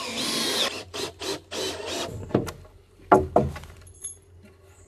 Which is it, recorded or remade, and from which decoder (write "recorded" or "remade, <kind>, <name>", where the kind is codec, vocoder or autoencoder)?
recorded